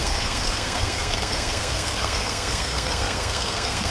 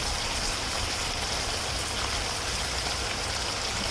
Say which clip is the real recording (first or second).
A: second